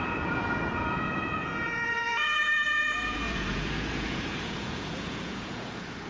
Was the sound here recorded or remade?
remade